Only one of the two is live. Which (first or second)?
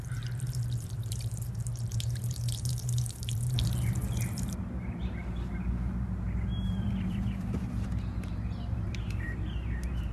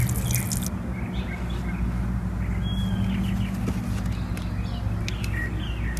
second